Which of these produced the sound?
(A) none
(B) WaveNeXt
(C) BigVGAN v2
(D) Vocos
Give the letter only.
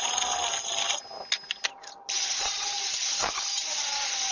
A